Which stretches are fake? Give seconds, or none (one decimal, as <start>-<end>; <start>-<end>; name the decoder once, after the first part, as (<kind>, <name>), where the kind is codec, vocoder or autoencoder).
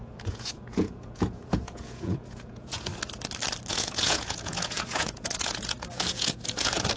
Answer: 0.0-2.9 (vocoder, Vocos); 3.7-7.0